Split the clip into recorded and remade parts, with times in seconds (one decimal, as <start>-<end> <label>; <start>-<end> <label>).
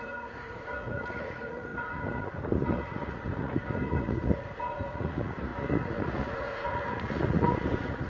0.0-8.1 remade